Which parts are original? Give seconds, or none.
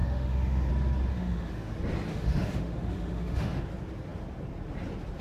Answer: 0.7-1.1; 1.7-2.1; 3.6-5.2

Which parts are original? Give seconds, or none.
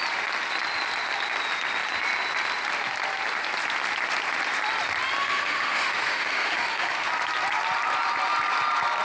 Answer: 0.0-5.2; 7.1-9.0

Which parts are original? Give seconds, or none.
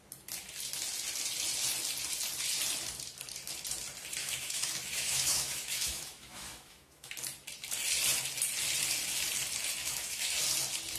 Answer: 0.0-4.2; 7.1-9.8; 10.3-11.0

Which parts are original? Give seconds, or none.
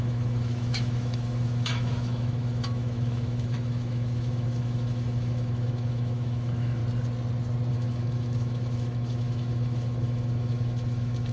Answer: 6.8-7.7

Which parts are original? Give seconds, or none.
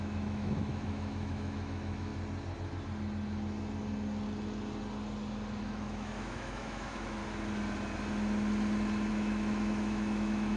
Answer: 2.1-5.6; 7.2-9.1